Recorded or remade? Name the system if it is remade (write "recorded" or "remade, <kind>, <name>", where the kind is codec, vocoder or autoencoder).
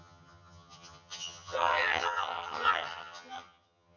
remade, vocoder, HiFi-GAN